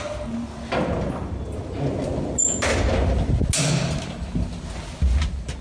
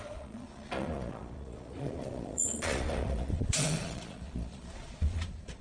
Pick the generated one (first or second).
second